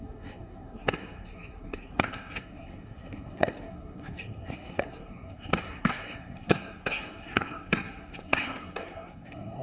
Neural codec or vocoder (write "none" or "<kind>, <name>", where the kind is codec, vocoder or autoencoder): codec, SNAC